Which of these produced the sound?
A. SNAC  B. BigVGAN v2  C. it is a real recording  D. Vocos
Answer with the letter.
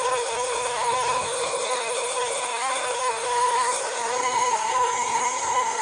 A